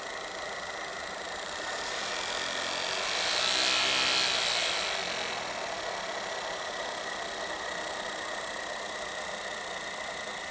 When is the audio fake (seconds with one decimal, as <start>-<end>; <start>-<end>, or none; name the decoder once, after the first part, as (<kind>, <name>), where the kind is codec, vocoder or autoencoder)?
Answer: 0.9-2.1 (vocoder, BigVGAN v2)